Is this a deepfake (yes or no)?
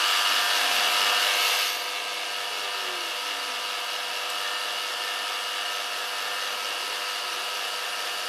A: no